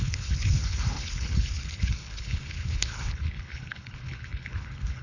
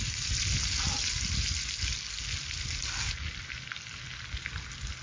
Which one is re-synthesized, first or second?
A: first